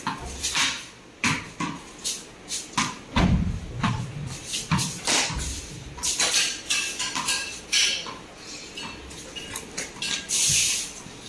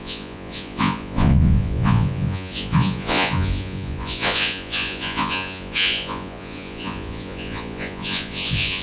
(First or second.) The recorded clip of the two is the first